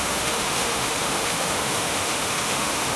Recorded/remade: remade